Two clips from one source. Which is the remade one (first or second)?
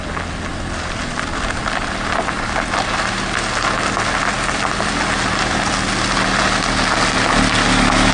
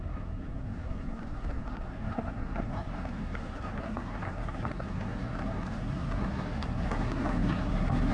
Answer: second